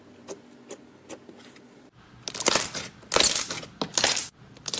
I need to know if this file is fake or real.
real